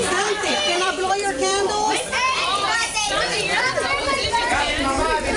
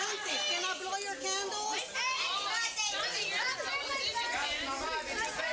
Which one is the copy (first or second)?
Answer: first